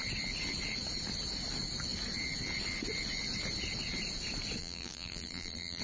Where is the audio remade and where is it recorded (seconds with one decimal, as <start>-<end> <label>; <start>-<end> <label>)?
0.0-4.6 recorded; 4.6-5.8 remade